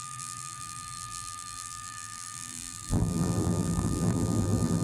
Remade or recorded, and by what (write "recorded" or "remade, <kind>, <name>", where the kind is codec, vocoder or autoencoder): remade, vocoder, BigVGAN v2